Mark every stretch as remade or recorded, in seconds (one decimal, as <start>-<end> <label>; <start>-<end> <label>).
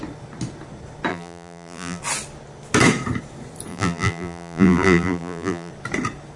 0.0-1.1 recorded; 1.1-2.0 remade; 2.0-3.7 recorded; 3.7-5.7 remade; 5.7-6.4 recorded